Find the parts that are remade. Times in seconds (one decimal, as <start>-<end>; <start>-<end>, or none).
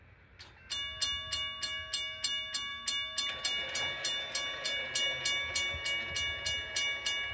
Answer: none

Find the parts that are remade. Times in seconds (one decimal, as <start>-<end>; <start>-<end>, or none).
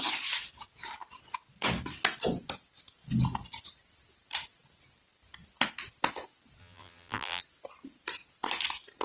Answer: 6.6-7.4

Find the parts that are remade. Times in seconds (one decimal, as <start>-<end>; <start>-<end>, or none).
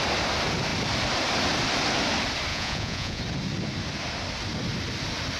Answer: 2.5-3.2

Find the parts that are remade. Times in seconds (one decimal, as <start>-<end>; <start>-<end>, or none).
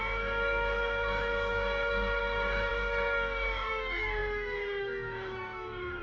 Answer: 0.0-6.0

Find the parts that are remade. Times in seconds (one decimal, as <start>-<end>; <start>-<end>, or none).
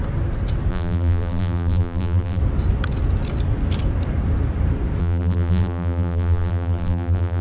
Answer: 0.7-2.4; 5.0-7.4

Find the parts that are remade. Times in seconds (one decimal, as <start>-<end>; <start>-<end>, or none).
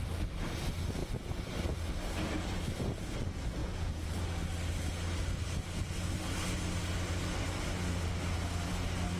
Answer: 3.6-4.2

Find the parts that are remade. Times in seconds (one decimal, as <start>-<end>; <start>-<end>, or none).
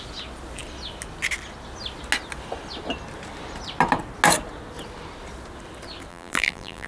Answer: 6.1-6.9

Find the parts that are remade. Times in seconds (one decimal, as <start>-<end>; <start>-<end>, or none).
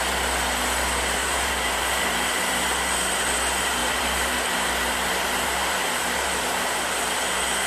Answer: 1.2-2.4; 3.8-6.6